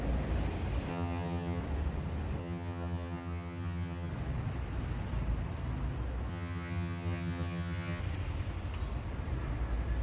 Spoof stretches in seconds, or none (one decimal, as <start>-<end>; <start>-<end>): 0.9-1.6; 2.4-4.1; 6.3-8.0